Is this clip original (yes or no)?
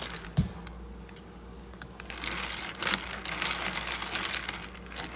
yes